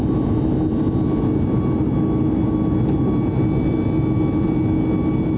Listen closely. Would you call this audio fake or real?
real